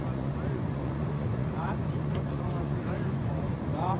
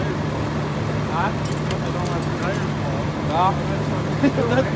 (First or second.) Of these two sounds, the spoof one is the first